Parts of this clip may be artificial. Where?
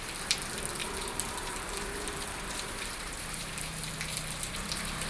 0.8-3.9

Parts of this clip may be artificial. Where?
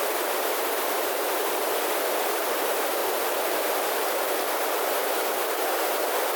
0.0-1.6; 2.2-3.0; 3.5-6.4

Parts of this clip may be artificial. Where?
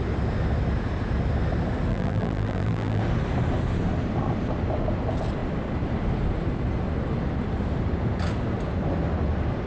1.9-3.0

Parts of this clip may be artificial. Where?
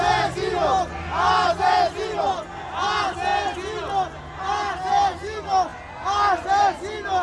none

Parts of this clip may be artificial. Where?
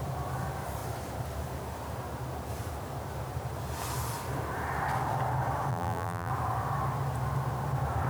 5.7-6.3